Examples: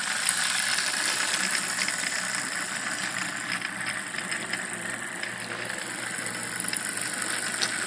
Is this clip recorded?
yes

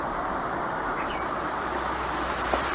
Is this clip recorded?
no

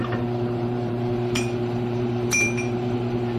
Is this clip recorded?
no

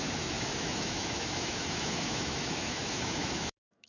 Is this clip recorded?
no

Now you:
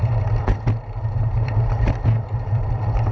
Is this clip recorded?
no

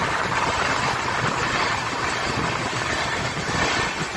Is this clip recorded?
yes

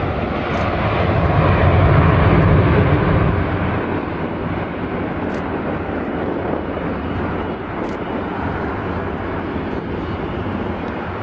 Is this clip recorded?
yes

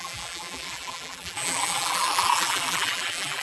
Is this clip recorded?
no